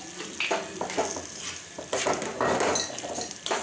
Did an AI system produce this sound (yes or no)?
no